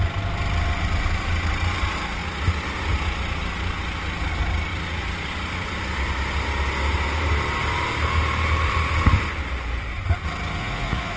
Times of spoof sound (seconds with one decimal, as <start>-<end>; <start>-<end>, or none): 10.6-11.2